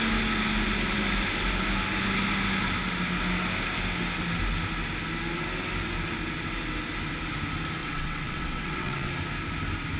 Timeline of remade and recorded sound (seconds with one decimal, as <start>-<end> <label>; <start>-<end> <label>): 0.0-7.8 recorded; 7.8-9.1 remade; 9.1-10.0 recorded